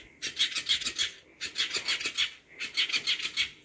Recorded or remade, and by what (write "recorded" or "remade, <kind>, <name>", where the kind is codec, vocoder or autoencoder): recorded